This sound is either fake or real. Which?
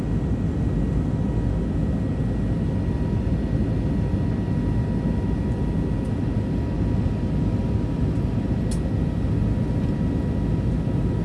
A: real